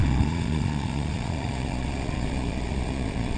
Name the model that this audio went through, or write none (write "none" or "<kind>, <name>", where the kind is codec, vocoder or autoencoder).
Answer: vocoder, Vocos